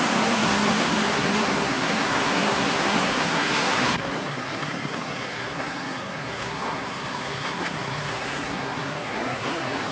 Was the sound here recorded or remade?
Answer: remade